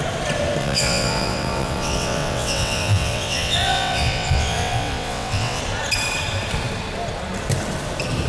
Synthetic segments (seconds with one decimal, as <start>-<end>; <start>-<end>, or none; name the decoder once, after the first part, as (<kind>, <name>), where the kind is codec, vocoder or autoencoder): 0.6-5.6 (vocoder, WaveNeXt)